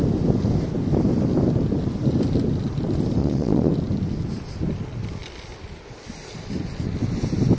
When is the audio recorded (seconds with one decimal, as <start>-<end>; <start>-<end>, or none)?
0.0-3.2; 3.7-7.6